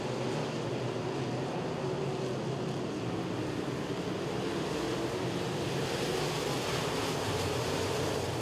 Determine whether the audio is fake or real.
real